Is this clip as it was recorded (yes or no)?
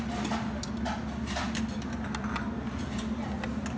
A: yes